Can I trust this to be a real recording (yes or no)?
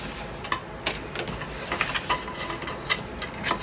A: yes